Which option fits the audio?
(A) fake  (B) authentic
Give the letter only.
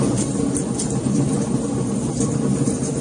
B